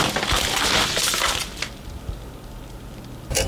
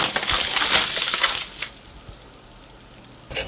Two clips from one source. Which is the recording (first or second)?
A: second